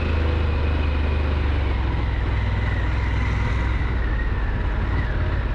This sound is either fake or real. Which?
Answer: real